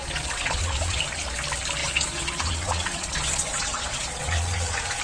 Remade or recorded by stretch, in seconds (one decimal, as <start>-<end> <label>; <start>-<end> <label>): 0.0-1.0 remade; 1.0-1.8 recorded; 1.8-5.0 remade